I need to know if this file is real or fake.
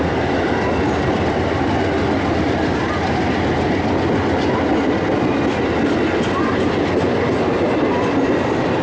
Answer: real